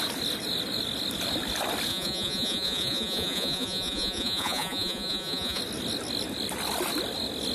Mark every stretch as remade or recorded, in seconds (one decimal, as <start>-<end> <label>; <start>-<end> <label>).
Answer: 0.0-1.9 recorded; 1.9-5.6 remade; 5.6-7.5 recorded